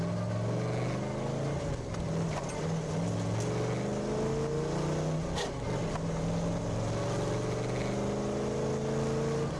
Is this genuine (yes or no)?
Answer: yes